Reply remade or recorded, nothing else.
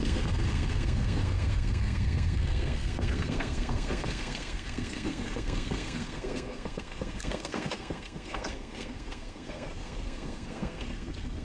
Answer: remade